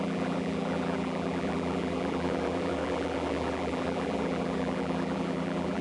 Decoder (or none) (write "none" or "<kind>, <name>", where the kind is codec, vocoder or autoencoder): vocoder, BigVGAN v2